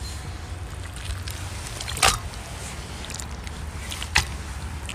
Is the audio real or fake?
real